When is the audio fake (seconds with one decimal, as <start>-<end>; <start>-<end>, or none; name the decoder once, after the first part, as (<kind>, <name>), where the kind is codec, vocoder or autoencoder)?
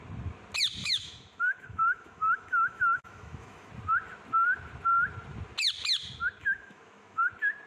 0.8-3.7 (autoencoder, DAC-VAE); 6.4-7.3